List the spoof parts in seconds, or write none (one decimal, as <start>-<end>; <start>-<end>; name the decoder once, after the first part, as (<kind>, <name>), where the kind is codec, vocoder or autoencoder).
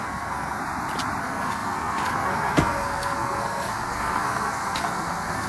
0.0-0.6 (codec, SNAC); 1.2-5.5